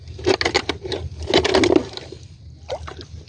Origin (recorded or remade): recorded